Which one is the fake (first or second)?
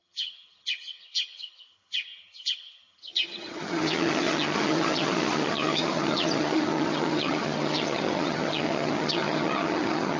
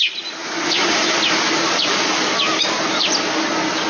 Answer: first